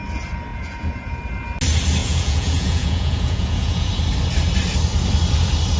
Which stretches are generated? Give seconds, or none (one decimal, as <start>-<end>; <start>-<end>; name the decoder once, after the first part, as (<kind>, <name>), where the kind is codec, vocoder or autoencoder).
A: 0.5-1.2 (vocoder, Vocos); 2.0-3.9